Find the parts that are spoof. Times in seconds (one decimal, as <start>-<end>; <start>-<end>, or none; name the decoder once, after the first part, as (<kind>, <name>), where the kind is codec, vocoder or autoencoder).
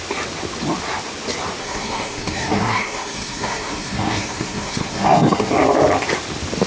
1.6-5.5 (codec, SNAC)